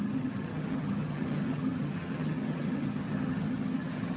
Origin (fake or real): fake